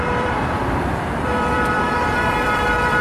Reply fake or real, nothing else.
fake